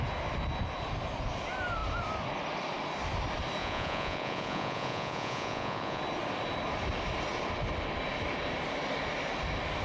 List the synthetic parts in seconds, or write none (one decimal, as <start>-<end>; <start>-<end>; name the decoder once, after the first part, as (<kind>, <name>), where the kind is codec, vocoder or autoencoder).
3.6-6.0 (vocoder, Vocos)